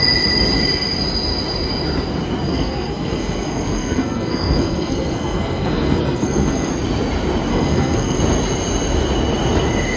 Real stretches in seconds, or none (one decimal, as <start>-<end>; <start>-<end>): 0.0-2.5; 6.7-7.5; 8.2-10.0

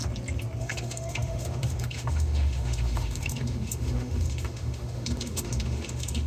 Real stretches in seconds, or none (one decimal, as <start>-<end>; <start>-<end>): 0.0-0.6